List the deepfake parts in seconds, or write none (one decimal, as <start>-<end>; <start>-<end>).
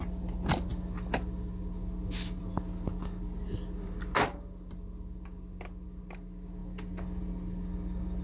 none